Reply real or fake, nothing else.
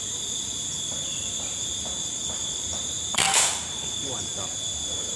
fake